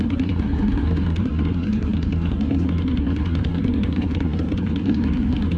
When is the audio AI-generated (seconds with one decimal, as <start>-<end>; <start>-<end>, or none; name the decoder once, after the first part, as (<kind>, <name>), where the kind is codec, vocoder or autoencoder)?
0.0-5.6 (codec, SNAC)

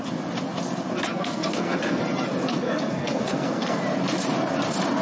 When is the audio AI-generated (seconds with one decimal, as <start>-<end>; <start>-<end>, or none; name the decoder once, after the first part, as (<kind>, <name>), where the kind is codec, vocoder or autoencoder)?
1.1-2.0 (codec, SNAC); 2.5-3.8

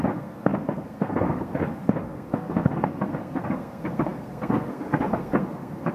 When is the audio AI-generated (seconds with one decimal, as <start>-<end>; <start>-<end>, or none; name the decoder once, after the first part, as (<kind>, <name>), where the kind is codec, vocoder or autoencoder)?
0.0-5.9 (codec, SNAC)